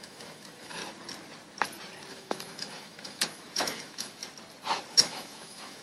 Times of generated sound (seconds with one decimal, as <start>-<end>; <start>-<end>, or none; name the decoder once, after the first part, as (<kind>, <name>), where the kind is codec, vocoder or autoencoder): 0.0-0.8 (autoencoder, DAC-VAE); 2.1-4.2; 4.9-5.8